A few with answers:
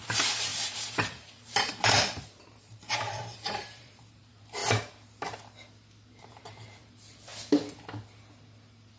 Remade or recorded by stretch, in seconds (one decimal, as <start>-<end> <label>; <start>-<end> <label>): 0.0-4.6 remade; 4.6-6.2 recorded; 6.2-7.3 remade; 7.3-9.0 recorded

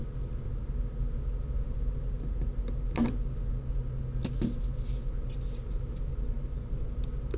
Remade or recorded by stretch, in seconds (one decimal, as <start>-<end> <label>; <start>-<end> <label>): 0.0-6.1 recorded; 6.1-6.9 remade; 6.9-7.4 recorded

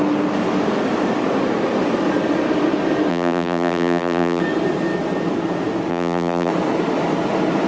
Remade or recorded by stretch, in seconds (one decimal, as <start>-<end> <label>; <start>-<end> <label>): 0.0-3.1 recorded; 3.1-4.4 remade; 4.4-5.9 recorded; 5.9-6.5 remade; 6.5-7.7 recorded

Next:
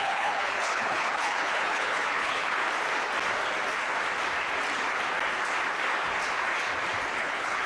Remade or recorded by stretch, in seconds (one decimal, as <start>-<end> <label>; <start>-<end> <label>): 0.0-2.6 remade; 2.6-7.2 recorded; 7.2-7.7 remade

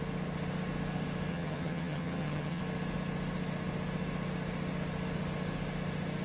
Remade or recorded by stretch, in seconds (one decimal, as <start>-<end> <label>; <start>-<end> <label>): 0.0-1.3 recorded; 1.3-2.6 remade; 2.6-6.2 recorded